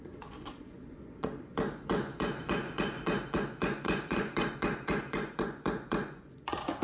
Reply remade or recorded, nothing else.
remade